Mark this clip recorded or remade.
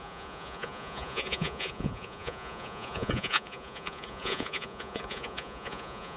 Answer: remade